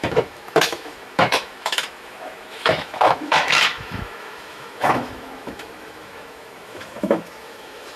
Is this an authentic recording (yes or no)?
no